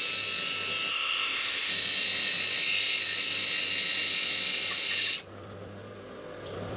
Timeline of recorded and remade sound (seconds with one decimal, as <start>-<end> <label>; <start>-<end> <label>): 0.0-0.9 recorded; 0.9-1.7 remade; 1.7-6.8 recorded